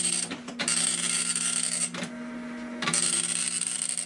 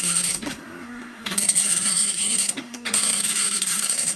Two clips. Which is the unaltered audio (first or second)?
first